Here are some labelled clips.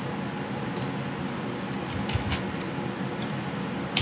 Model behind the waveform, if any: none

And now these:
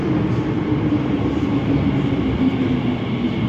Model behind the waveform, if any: vocoder, BigVGAN v2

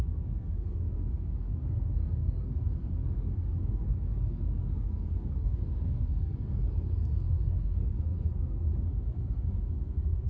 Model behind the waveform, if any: codec, SNAC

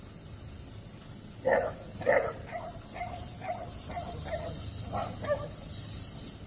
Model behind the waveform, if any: none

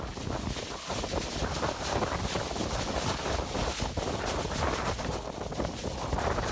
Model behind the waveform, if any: none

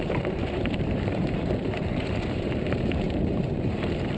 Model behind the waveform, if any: vocoder, BigVGAN v2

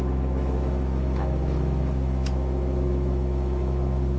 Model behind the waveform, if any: autoencoder, DAC-VAE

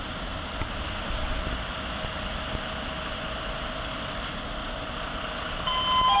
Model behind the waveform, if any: none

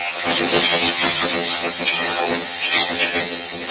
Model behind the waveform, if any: vocoder, HiFi-GAN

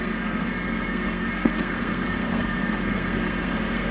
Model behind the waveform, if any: codec, SNAC